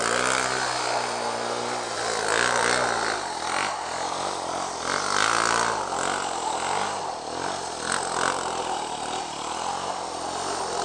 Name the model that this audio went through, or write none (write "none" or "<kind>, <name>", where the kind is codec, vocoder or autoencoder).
none